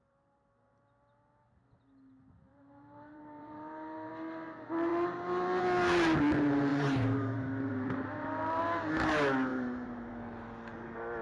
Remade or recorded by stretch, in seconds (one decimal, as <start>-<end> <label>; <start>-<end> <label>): 0.0-2.5 recorded; 2.5-4.1 remade; 4.1-6.7 recorded; 6.7-8.6 remade; 8.6-9.5 recorded; 9.5-10.1 remade; 10.1-11.2 recorded